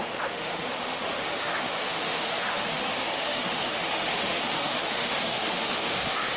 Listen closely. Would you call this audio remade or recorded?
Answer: remade